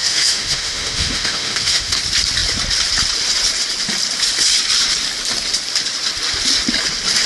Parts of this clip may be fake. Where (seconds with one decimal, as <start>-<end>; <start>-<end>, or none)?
0.0-2.0